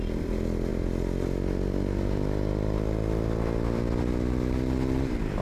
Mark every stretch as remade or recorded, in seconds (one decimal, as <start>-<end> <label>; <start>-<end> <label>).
0.0-5.4 recorded